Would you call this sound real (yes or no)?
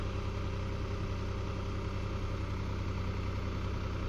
yes